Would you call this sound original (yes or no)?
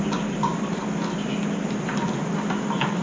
yes